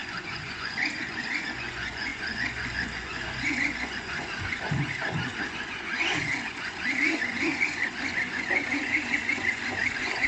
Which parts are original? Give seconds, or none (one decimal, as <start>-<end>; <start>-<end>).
none